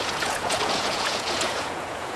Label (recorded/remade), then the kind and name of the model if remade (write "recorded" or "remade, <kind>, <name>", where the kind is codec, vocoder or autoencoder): remade, vocoder, Vocos